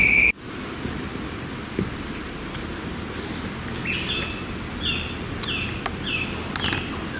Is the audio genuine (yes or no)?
yes